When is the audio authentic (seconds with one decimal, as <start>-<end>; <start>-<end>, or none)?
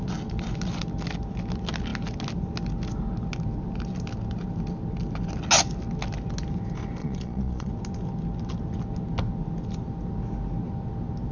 0.0-7.0; 7.7-11.3